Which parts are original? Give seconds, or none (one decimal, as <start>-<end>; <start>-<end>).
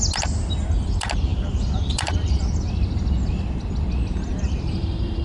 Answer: 0.0-1.3; 2.4-4.3